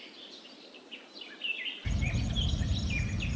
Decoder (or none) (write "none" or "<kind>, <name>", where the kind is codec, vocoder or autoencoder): none